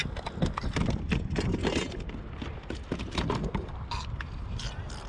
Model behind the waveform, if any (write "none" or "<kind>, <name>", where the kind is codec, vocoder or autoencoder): none